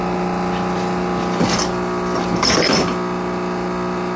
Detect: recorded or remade recorded